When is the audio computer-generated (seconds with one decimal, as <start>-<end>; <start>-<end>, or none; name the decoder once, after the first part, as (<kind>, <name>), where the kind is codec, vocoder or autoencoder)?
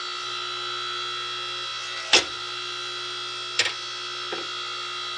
none